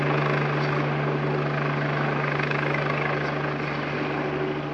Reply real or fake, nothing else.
real